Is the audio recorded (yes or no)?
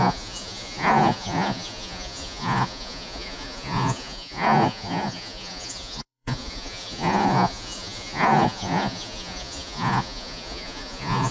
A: no